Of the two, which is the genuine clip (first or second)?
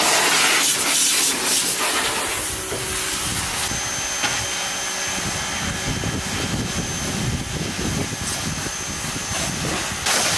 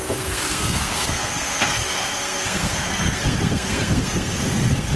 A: first